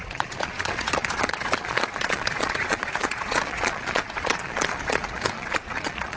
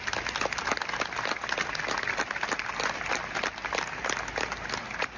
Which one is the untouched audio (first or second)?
second